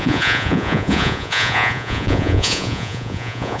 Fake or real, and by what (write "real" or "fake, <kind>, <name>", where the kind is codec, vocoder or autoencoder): fake, vocoder, Vocos